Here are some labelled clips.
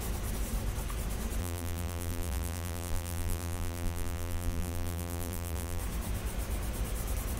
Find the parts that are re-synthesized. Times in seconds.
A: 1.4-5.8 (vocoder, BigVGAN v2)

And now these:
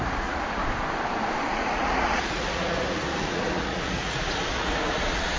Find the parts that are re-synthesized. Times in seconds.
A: 0.0-0.6 (vocoder, Vocos); 1.5-5.4

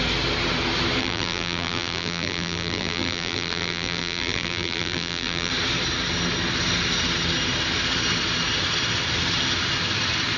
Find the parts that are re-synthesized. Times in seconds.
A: 1.0-5.5 (vocoder, BigVGAN v2)

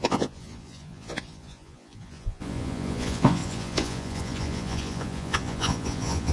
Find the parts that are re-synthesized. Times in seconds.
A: 0.0-6.3 (vocoder, Vocos)

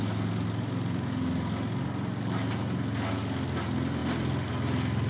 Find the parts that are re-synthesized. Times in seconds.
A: none